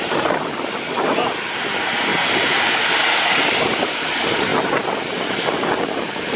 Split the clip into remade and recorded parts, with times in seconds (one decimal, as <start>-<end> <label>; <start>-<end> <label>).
0.0-2.1 recorded; 2.1-4.0 remade; 4.0-6.4 recorded